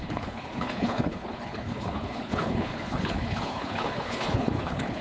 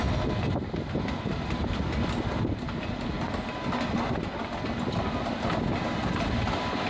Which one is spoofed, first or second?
first